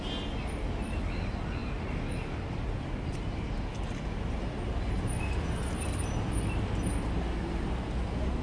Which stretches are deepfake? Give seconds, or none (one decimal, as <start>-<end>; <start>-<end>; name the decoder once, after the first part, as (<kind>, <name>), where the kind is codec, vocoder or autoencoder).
none